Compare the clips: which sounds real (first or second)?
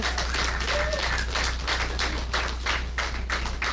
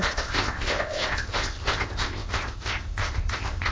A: first